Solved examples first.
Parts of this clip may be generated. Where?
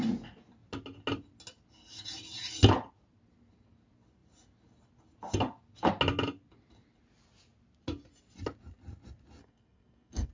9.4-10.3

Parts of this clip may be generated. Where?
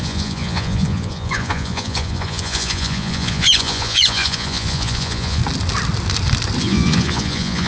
0.0-5.4; 6.6-7.7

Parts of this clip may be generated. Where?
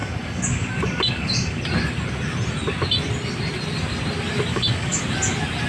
0.0-1.6; 4.5-5.0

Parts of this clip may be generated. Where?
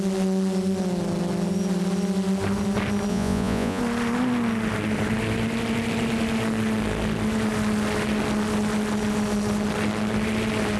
3.1-3.8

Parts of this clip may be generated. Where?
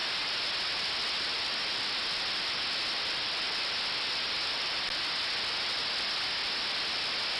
none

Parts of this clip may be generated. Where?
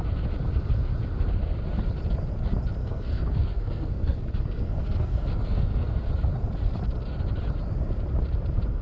2.8-6.1